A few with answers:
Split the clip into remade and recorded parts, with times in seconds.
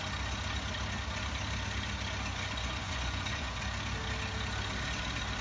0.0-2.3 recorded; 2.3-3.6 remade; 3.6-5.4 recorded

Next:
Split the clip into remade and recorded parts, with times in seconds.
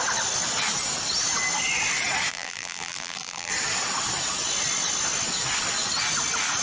0.0-2.3 recorded; 2.3-3.5 remade; 3.5-6.6 recorded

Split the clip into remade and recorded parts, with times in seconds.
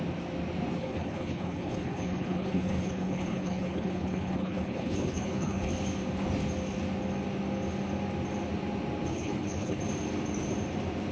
0.0-0.8 recorded; 0.8-5.7 remade; 5.7-9.1 recorded; 9.1-9.8 remade; 9.8-11.1 recorded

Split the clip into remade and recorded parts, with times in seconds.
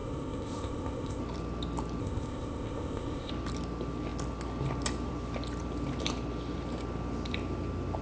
0.0-1.2 remade; 1.2-2.0 recorded; 2.0-3.3 remade; 3.3-8.0 recorded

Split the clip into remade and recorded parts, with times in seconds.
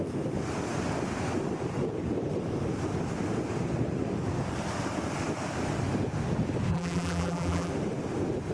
0.0-6.7 recorded; 6.7-7.7 remade; 7.7-8.5 recorded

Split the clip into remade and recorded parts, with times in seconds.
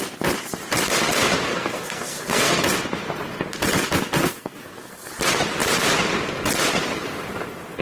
0.0-1.5 recorded; 1.5-2.6 remade; 2.6-4.2 recorded; 4.2-5.1 remade; 5.1-7.8 recorded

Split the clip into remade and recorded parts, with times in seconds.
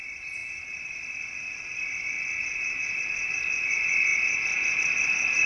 0.0-5.5 recorded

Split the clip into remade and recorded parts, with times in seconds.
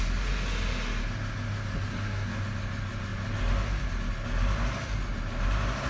0.0-1.9 recorded; 1.9-2.4 remade; 2.4-5.9 recorded